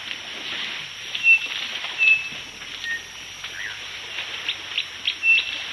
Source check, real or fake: real